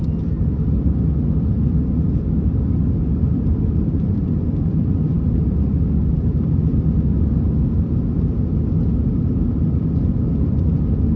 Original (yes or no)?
yes